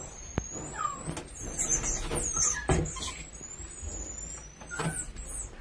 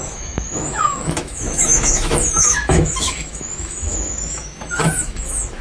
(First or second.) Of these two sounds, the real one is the first